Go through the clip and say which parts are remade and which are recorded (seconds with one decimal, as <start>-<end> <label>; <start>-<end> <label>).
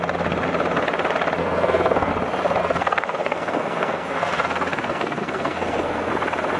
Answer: 0.0-1.4 recorded; 1.4-2.1 remade; 2.1-2.6 recorded; 2.6-6.1 remade; 6.1-6.6 recorded